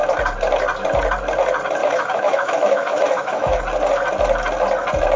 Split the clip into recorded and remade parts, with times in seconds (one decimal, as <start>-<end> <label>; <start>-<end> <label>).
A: 0.0-1.8 recorded; 1.8-3.6 remade; 3.6-5.2 recorded